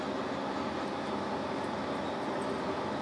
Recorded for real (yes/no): yes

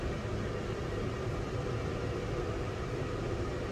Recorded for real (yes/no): yes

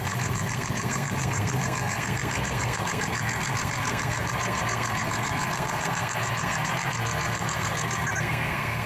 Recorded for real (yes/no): no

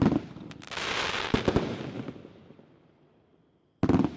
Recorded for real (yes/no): yes